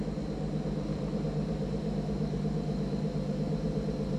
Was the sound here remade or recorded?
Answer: remade